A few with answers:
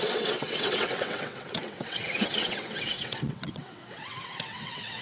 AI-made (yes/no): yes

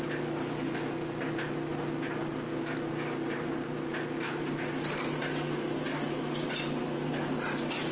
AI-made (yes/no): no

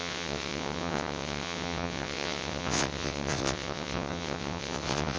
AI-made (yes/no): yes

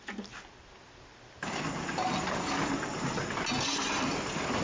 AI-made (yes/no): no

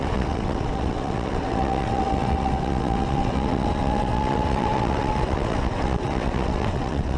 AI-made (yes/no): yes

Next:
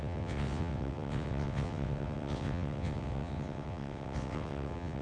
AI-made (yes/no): yes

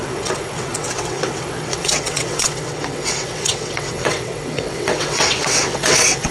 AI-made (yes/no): yes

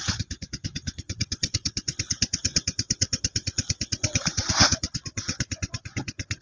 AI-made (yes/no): yes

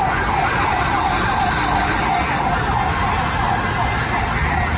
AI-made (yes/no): no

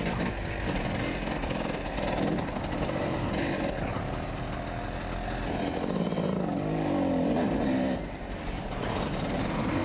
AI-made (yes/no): no